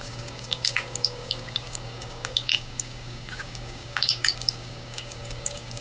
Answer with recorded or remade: remade